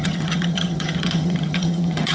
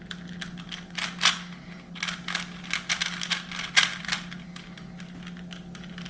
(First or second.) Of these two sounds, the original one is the second